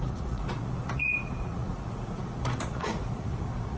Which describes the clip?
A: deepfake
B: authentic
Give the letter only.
A